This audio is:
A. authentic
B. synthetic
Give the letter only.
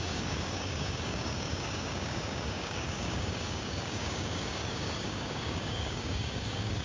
B